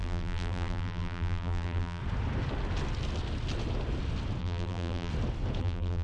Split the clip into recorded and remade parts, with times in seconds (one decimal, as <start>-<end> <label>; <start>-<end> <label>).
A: 0.0-2.0 remade; 2.0-4.4 recorded; 4.4-5.1 remade; 5.1-5.6 recorded; 5.6-6.0 remade